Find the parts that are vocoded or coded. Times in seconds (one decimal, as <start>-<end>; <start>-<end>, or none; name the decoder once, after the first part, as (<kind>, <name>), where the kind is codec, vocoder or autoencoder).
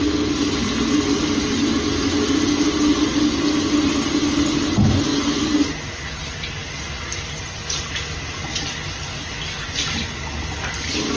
none